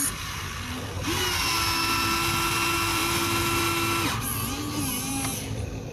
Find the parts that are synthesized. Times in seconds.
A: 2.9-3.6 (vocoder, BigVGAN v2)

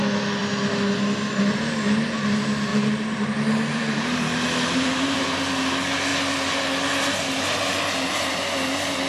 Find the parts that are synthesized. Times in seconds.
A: 2.7-5.2 (vocoder, BigVGAN v2)

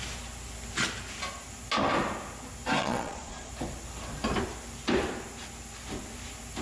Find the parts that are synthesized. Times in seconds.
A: 2.8-3.5 (vocoder, Vocos)